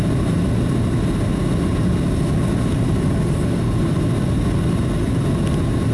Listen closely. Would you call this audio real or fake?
real